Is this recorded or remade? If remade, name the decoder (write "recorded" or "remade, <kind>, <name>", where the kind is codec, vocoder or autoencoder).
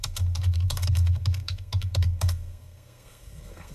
remade, codec, SNAC